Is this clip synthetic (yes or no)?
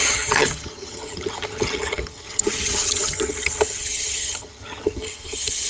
yes